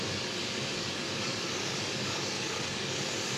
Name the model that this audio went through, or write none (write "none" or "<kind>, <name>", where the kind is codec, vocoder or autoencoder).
codec, DAC